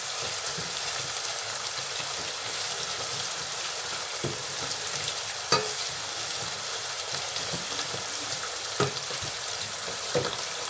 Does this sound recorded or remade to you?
remade